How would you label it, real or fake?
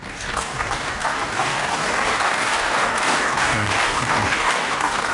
fake